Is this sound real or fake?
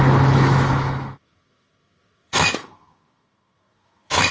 fake